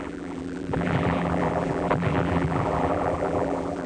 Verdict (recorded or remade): remade